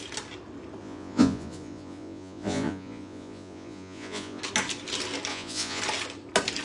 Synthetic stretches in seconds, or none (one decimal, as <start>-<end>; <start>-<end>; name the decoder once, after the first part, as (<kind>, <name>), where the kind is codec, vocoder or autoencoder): 0.8-4.4 (vocoder, Vocos); 5.3-5.8